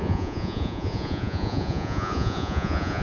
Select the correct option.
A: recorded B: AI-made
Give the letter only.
B